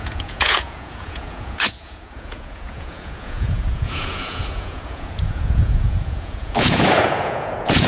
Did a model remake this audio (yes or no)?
yes